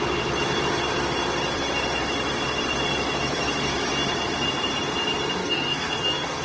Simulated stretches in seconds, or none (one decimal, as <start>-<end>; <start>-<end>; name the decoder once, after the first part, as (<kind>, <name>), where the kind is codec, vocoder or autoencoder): 5.4-6.4 (codec, SNAC)